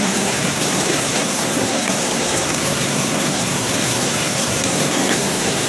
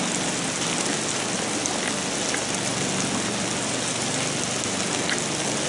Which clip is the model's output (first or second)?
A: first